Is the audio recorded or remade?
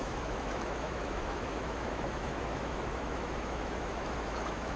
remade